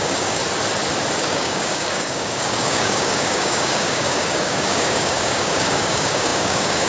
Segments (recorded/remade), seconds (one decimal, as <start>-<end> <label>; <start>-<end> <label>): 0.0-0.4 remade; 0.4-1.2 recorded; 1.2-6.9 remade